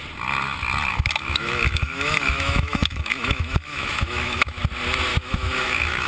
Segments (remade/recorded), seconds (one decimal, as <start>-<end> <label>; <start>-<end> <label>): 0.0-0.9 recorded; 0.9-4.6 remade; 4.6-5.1 recorded; 5.1-6.1 remade